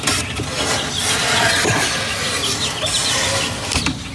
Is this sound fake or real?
real